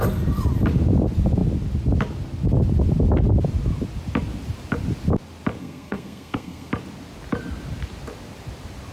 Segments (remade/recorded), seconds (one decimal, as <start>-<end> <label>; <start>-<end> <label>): 0.0-5.6 recorded; 5.6-6.7 remade; 6.7-8.9 recorded